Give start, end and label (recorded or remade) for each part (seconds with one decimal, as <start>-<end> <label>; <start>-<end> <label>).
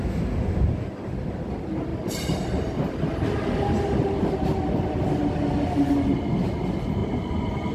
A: 0.0-7.7 recorded